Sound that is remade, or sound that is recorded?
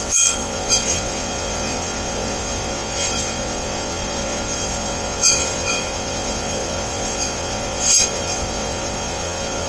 remade